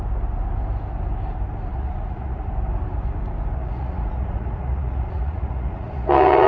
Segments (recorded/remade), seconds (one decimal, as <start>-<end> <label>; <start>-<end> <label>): 0.0-1.7 recorded; 1.7-2.5 remade; 2.5-3.6 recorded; 3.6-6.5 remade